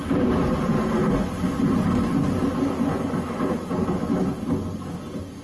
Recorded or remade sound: recorded